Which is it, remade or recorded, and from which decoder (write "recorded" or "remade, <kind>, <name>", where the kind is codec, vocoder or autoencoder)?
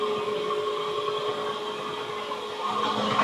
recorded